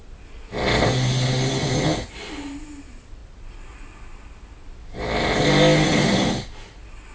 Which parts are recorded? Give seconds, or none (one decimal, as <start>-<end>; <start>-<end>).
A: 0.0-7.1